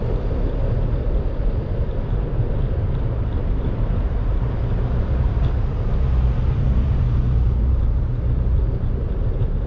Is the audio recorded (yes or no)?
no